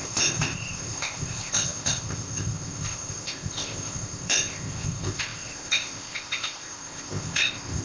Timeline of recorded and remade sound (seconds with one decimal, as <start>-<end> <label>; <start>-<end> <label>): 0.0-7.8 remade